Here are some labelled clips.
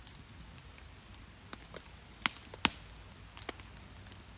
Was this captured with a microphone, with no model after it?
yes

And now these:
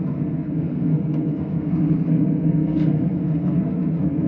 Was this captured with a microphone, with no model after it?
no